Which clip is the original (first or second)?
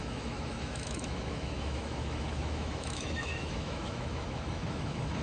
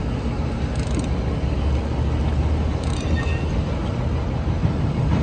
second